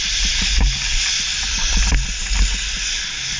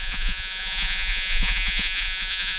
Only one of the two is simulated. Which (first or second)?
second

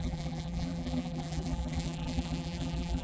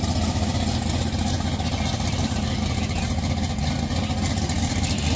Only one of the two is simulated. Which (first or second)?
first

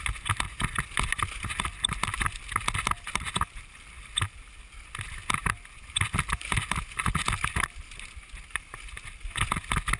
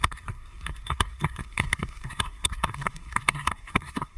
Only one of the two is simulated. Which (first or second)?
second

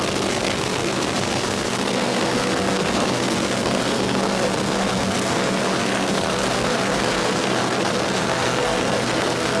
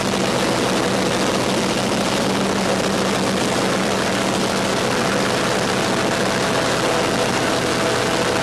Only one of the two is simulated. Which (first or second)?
first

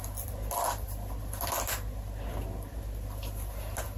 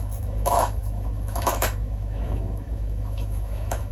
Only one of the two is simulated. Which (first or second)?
second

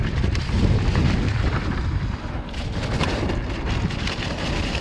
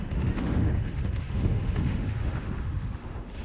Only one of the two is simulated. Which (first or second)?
second